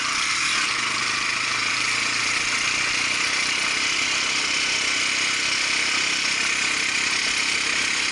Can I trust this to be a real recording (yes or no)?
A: yes